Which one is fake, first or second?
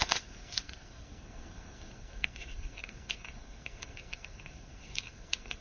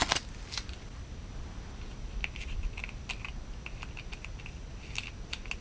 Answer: first